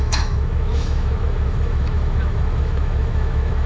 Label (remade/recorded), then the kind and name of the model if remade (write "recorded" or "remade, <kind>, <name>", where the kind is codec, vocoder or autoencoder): remade, autoencoder, DAC-VAE